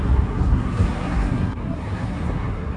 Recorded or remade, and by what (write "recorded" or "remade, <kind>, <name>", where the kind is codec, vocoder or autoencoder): remade, codec, SNAC